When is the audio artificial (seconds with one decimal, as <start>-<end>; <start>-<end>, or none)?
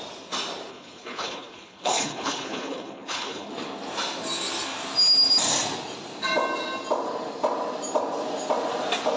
0.7-3.5